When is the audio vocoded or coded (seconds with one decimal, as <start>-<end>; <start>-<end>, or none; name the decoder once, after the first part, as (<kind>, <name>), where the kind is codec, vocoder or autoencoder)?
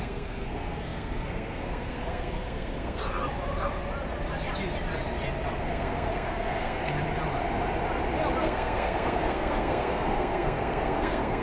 0.0-3.0 (codec, SNAC); 5.6-6.9; 8.4-11.4